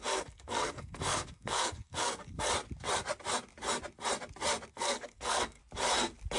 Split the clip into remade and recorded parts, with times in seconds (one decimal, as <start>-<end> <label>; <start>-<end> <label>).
0.0-2.5 remade; 2.5-4.7 recorded; 4.7-5.6 remade; 5.6-6.4 recorded

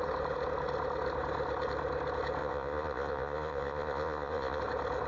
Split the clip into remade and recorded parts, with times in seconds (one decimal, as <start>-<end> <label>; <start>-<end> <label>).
0.0-2.4 recorded; 2.4-4.6 remade; 4.6-5.1 recorded